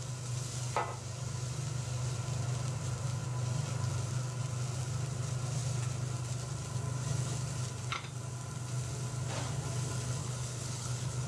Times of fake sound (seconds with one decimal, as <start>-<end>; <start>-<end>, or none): 10.2-11.3